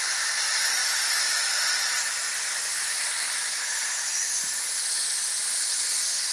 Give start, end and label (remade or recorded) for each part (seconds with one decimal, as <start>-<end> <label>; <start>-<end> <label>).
0.0-0.8 recorded; 0.8-1.6 remade; 1.6-2.7 recorded; 2.7-4.5 remade; 4.5-6.3 recorded